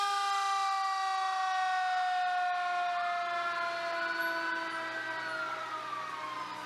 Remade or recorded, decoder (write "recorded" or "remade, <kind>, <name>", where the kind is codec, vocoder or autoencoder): recorded